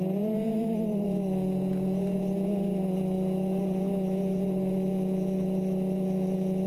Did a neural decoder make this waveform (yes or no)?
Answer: yes